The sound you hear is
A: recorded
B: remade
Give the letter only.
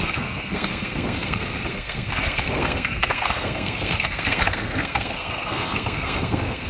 B